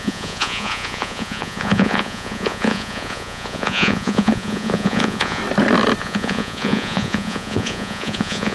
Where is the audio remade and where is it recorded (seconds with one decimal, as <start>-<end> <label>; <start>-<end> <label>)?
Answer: 0.0-5.4 remade; 5.4-6.0 recorded; 6.0-8.5 remade